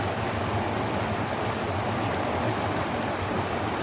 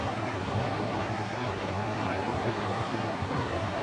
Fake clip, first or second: second